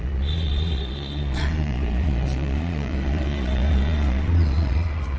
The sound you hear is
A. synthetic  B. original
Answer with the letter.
A